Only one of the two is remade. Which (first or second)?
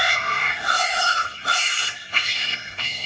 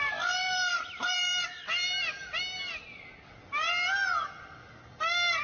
first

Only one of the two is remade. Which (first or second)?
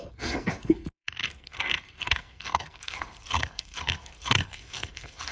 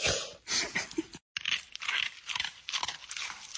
first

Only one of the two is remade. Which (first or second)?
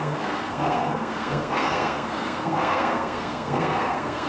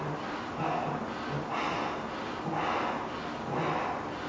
first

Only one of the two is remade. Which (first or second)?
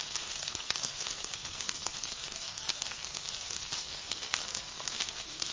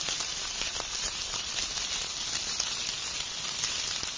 first